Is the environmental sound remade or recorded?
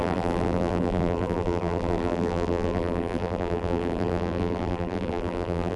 remade